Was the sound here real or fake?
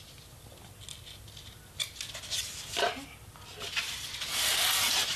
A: real